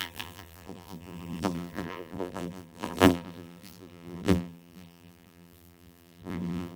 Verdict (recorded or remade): remade